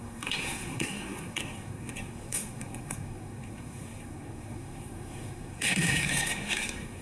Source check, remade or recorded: remade